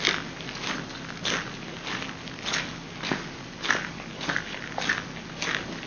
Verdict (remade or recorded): recorded